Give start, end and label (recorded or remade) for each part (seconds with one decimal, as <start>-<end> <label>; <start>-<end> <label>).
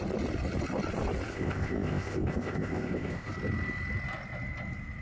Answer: 0.0-1.3 recorded; 1.3-3.3 remade; 3.3-5.0 recorded